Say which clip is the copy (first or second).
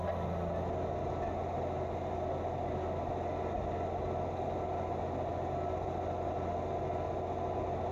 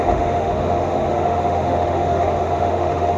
second